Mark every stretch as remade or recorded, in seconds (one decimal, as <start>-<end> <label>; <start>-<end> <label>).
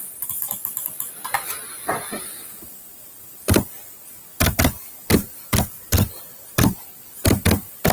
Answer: 0.0-7.9 recorded